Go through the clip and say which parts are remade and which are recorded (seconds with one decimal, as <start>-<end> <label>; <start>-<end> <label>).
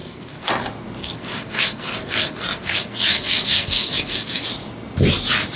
0.0-0.5 remade; 0.5-1.0 recorded; 1.0-4.4 remade; 4.4-5.6 recorded